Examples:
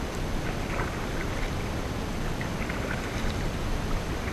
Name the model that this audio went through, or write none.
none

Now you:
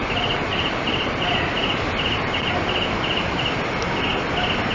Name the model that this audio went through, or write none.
none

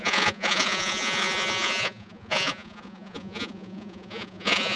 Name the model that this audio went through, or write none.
vocoder, Vocos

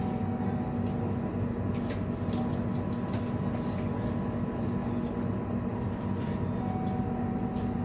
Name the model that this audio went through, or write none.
none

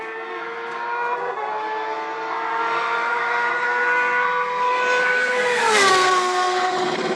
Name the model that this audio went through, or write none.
codec, SNAC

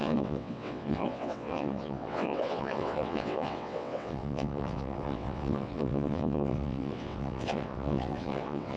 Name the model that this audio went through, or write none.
vocoder, WaveNeXt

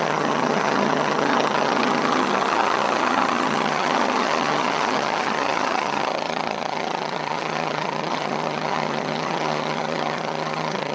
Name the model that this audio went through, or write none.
vocoder, HiFi-GAN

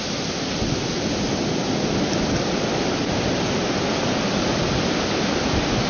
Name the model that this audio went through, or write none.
none